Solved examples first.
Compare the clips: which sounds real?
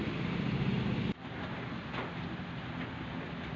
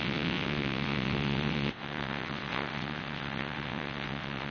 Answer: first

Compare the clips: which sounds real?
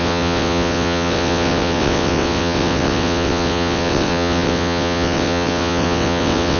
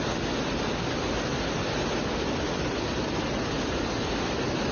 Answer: second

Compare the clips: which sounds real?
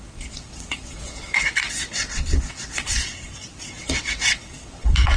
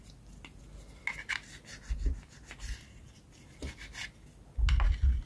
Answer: second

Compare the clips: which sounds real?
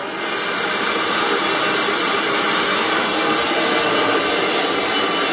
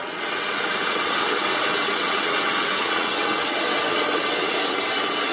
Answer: first